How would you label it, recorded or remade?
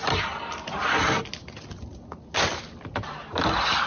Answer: recorded